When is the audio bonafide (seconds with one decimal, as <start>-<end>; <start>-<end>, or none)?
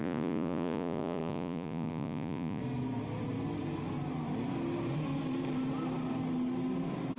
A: 2.6-7.2